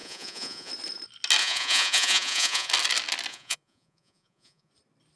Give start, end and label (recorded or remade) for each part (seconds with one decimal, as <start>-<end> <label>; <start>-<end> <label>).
0.0-0.7 remade; 0.7-1.4 recorded; 1.4-2.7 remade; 2.7-3.3 recorded; 3.3-4.7 remade; 4.7-5.2 recorded